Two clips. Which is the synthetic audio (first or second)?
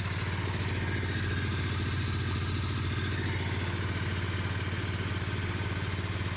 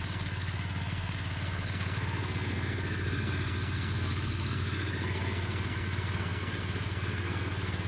second